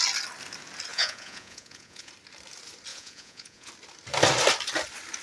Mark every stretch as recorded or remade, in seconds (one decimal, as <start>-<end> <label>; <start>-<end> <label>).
0.0-0.9 recorded; 0.9-2.1 remade; 2.1-2.9 recorded; 2.9-3.7 remade; 3.7-5.2 recorded